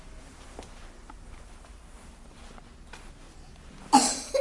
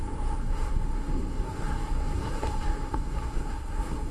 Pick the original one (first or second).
first